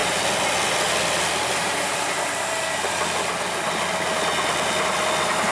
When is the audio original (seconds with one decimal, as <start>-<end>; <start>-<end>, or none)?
0.0-5.5